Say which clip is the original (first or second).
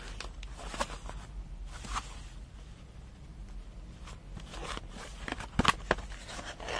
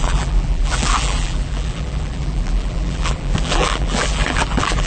first